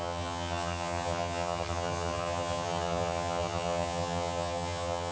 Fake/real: fake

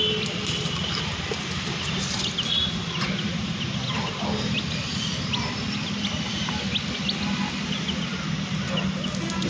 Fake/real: real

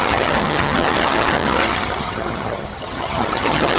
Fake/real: fake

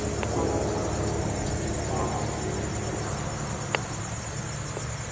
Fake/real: real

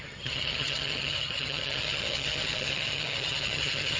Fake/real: fake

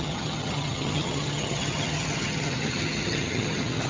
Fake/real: fake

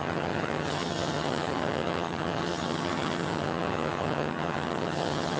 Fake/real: fake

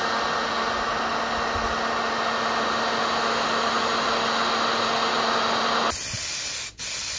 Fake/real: real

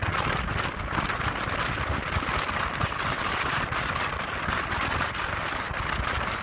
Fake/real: real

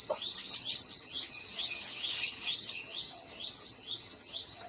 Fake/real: fake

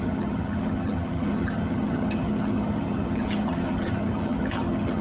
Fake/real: fake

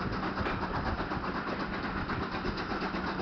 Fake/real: real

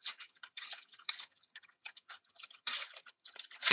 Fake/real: fake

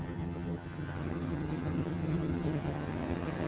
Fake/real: fake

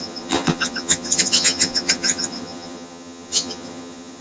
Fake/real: fake